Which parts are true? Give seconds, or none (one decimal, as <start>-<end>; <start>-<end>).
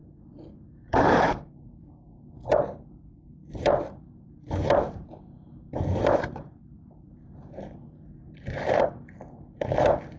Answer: none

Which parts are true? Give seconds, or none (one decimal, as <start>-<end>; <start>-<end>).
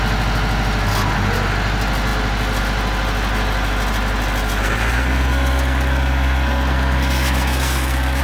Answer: 0.0-4.6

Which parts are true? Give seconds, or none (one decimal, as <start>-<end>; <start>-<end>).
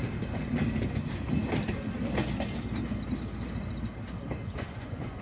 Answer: 0.0-4.4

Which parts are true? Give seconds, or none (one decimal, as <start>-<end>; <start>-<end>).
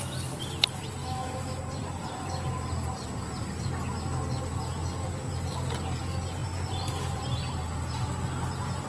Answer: 0.0-1.0; 1.6-8.9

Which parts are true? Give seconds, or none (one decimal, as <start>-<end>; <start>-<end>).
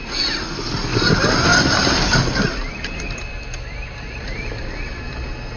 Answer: 0.0-1.5; 4.5-5.6